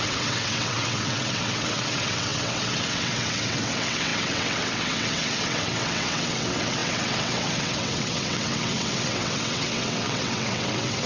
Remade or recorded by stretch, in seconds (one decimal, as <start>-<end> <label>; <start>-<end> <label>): 0.0-11.1 remade